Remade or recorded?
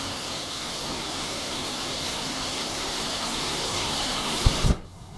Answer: remade